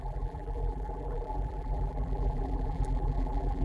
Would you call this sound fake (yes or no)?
yes